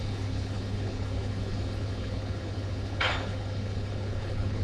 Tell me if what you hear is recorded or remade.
remade